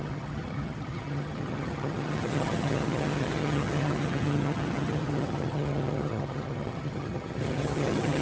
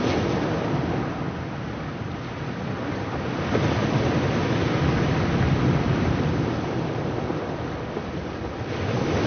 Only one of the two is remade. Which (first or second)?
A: first